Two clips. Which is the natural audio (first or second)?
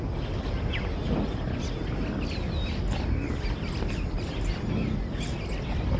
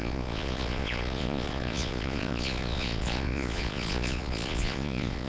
first